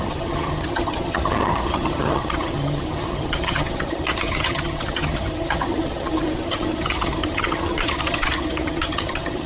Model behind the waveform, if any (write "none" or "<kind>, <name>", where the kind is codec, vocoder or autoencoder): vocoder, HiFi-GAN